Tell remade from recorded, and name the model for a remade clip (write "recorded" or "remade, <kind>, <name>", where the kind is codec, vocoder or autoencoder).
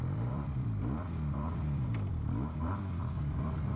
remade, vocoder, BigVGAN v2